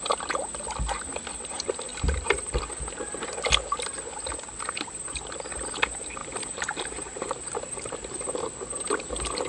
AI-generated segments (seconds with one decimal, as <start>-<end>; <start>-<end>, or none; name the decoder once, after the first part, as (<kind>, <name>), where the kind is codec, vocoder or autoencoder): 1.9-2.6 (vocoder, BigVGAN v2); 6.2-8.1